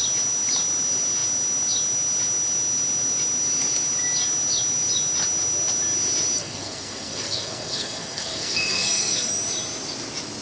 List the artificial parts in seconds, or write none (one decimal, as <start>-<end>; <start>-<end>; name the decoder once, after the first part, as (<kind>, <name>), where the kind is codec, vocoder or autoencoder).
6.4-9.3 (codec, SNAC)